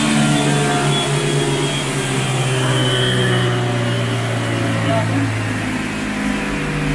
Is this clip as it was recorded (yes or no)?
yes